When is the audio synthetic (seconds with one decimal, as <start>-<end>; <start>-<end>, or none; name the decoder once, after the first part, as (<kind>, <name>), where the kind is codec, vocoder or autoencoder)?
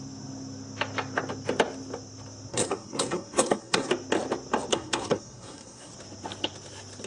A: 2.5-3.9 (codec, SNAC); 4.7-5.9